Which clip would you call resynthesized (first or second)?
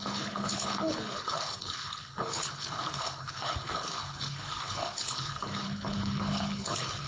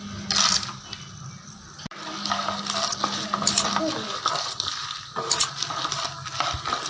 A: first